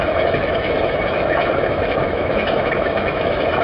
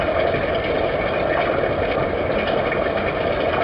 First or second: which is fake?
first